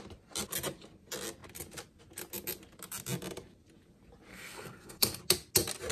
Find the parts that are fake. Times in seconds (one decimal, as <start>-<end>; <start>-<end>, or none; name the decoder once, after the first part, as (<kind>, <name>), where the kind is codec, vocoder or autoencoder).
4.3-5.2 (codec, SNAC)